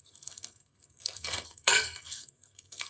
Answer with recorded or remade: remade